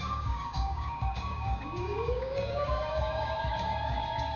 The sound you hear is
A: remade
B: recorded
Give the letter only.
A